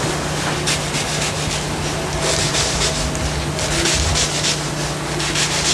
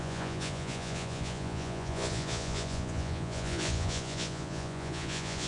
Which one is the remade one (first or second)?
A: second